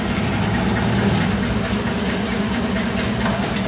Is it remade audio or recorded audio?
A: recorded